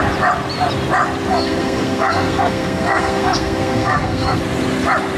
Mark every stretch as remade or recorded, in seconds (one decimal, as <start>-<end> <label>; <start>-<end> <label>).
0.0-1.3 recorded; 1.3-4.4 remade; 4.4-5.2 recorded